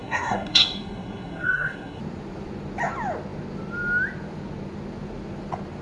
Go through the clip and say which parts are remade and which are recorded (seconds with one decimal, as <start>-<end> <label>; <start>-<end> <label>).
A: 0.0-2.0 remade; 2.0-5.8 recorded

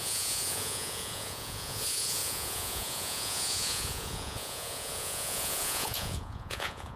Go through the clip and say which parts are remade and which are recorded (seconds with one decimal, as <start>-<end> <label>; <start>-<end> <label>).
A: 0.0-7.0 remade

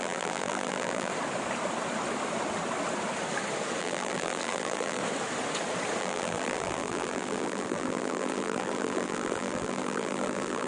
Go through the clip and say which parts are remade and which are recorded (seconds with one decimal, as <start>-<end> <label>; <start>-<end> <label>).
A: 0.0-1.1 remade; 1.1-3.8 recorded; 3.8-5.0 remade; 5.0-6.0 recorded; 6.0-10.7 remade

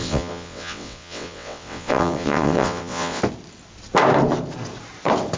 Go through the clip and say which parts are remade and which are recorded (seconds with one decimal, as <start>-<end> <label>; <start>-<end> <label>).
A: 0.0-3.2 remade; 3.2-5.4 recorded

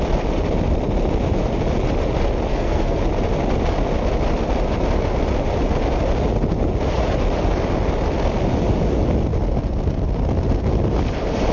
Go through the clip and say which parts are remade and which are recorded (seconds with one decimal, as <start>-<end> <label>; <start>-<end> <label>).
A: 0.0-2.5 recorded; 2.5-3.0 remade; 3.0-11.5 recorded

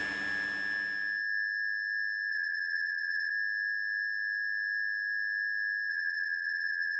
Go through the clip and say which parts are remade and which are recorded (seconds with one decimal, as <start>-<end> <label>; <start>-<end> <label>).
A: 0.0-2.3 recorded; 2.3-3.3 remade; 3.3-5.9 recorded; 5.9-7.0 remade

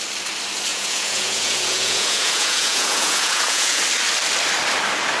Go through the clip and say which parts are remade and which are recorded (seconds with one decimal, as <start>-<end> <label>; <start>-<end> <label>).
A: 0.0-0.7 recorded; 0.7-3.8 remade; 3.8-5.2 recorded